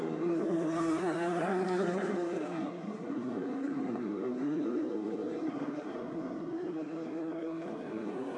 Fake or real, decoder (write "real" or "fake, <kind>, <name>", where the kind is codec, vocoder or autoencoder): fake, codec, SNAC